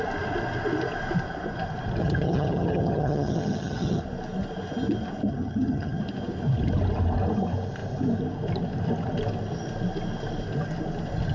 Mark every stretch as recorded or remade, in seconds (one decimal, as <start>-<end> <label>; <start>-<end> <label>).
0.0-2.0 recorded; 2.0-4.0 remade; 4.0-5.3 recorded; 5.3-6.0 remade; 6.0-11.3 recorded